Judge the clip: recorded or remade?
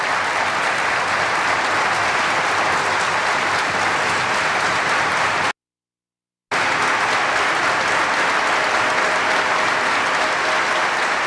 recorded